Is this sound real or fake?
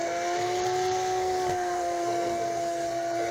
fake